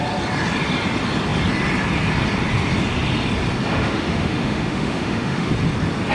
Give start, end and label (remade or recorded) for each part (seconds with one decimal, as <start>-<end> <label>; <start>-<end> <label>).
0.0-3.7 recorded; 3.7-5.5 remade; 5.5-6.1 recorded